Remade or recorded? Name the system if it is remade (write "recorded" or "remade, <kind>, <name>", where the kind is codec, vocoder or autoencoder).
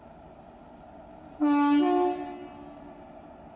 recorded